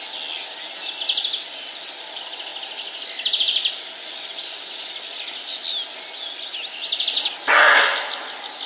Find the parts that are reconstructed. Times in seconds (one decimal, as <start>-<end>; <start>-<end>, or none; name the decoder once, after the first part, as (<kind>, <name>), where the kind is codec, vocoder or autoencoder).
none